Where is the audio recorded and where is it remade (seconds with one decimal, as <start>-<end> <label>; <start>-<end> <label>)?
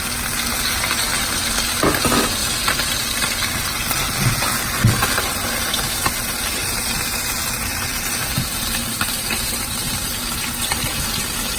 0.0-6.6 recorded; 6.6-11.6 remade